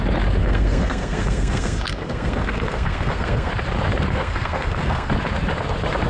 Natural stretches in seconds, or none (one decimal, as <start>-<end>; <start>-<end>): 0.0-0.4; 3.5-4.1; 5.1-6.1